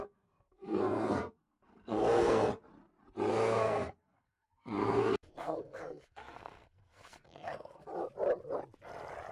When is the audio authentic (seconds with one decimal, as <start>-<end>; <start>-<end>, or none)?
2.5-3.3; 7.9-9.3